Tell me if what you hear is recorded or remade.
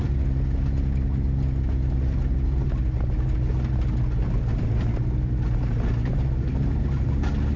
recorded